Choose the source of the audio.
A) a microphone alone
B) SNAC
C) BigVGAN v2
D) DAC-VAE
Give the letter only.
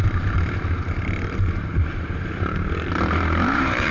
C